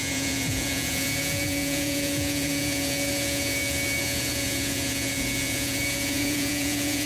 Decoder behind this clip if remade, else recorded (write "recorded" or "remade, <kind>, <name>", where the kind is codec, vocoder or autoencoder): remade, vocoder, Vocos